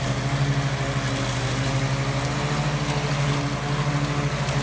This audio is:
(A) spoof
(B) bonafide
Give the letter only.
B